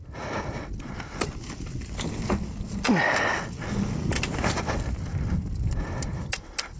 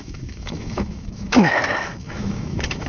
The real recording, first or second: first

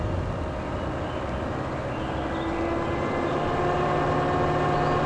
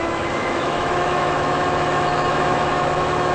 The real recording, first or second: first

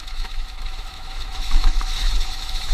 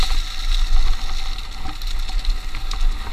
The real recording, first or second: second